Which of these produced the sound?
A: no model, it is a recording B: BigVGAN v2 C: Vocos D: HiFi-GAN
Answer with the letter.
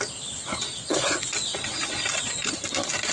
A